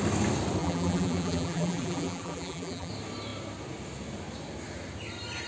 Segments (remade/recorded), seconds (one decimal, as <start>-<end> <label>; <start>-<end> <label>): 0.0-0.6 recorded; 0.6-2.9 remade; 2.9-5.5 recorded